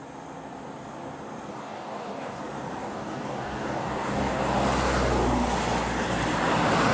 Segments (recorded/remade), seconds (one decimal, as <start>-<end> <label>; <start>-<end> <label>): 0.0-1.5 recorded; 1.5-2.4 remade; 2.4-2.8 recorded; 2.8-4.4 remade; 4.4-6.9 recorded